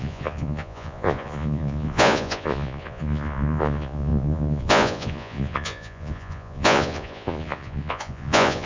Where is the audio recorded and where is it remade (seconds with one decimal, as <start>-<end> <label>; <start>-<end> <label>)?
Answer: 0.0-8.7 remade